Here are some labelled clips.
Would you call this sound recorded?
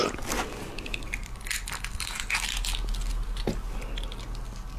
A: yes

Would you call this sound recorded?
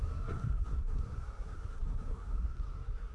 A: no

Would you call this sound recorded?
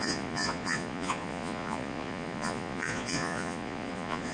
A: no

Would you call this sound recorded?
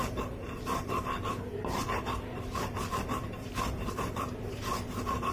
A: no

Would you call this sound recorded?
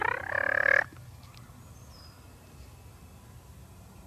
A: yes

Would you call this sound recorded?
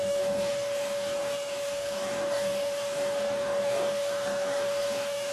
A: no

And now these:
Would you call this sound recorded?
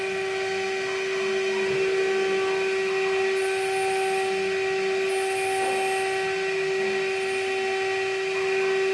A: yes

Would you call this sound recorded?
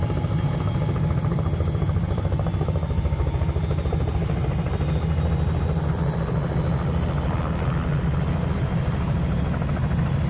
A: yes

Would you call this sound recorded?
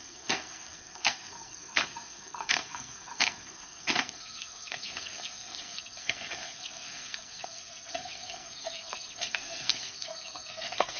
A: no